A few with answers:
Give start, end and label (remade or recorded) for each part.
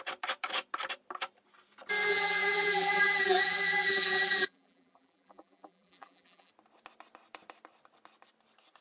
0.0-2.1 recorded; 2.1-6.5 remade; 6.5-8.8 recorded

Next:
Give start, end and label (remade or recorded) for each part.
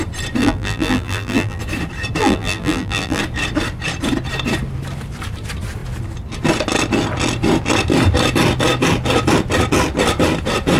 0.0-0.4 recorded; 0.4-1.6 remade; 1.6-2.2 recorded; 2.2-3.2 remade; 3.2-10.8 recorded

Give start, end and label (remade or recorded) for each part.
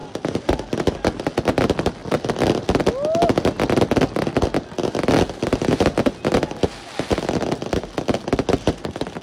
0.0-2.0 recorded; 2.0-2.8 remade; 2.8-9.2 recorded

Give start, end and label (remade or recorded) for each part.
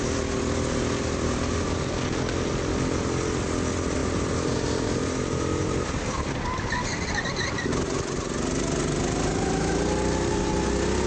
0.0-4.0 recorded; 4.0-6.6 remade; 6.6-11.1 recorded